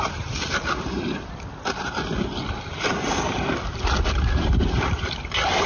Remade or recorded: recorded